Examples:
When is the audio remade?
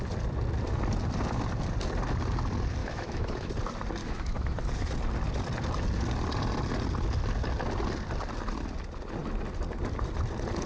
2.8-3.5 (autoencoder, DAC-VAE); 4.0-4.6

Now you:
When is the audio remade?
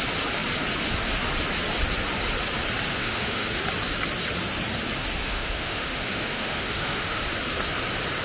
2.9-3.6 (autoencoder, DAC-VAE); 5.2-7.2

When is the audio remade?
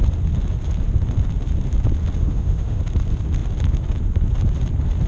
2.2-2.8 (autoencoder, DAC-VAE)